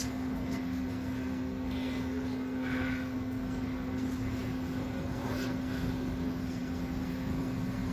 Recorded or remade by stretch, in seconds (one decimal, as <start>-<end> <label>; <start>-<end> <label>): 0.0-7.9 remade